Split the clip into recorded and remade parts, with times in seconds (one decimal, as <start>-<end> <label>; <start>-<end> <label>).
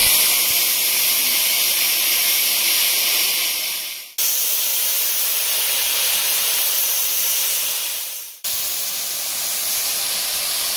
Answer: 0.0-0.7 remade; 0.7-4.7 recorded; 4.7-8.6 remade; 8.6-10.8 recorded